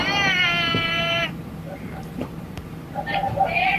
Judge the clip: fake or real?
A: fake